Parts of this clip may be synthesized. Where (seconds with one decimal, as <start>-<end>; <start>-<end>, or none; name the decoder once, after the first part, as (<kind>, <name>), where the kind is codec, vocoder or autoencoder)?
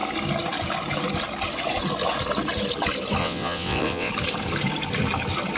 3.2-4.1 (vocoder, WaveNeXt)